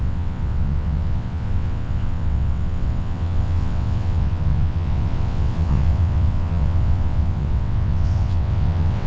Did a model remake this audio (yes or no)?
yes